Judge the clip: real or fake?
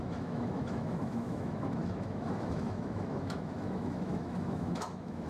fake